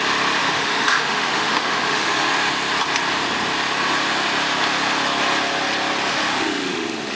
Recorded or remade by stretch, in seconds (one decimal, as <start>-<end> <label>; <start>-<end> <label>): 0.0-0.4 recorded; 0.4-2.3 remade; 2.3-6.1 recorded; 6.1-7.2 remade